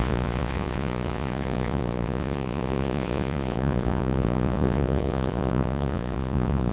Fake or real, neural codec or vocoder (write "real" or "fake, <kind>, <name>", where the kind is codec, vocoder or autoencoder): fake, vocoder, Vocos